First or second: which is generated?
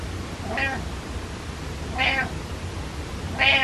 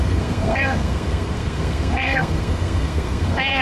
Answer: second